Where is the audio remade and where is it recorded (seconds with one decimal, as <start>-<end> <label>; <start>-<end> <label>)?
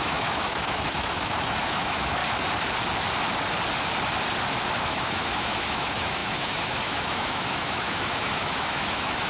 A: 0.0-2.2 remade; 2.2-4.8 recorded; 4.8-9.3 remade